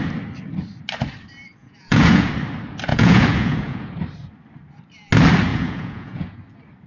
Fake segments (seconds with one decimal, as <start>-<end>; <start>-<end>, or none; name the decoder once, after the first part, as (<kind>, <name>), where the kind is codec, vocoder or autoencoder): 1.6-2.3 (vocoder, Vocos); 2.9-3.9; 5.5-6.4